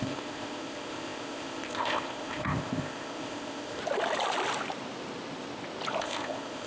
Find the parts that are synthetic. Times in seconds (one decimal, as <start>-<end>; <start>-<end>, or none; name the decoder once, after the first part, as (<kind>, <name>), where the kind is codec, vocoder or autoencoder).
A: 0.0-3.8 (codec, ZipCodec); 6.0-6.7